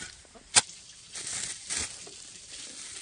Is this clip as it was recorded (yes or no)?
yes